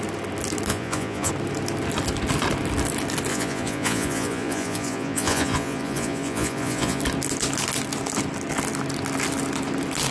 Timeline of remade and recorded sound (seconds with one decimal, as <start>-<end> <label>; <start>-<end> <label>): 0.0-0.7 recorded; 0.7-1.3 remade; 1.3-3.3 recorded; 3.3-7.0 remade; 7.0-10.1 recorded